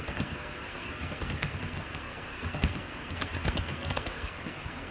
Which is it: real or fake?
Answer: fake